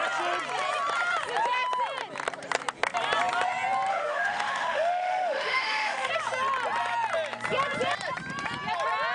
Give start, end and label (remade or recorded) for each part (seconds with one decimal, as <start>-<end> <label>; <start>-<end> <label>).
0.0-3.9 recorded; 3.9-6.1 remade; 6.1-9.1 recorded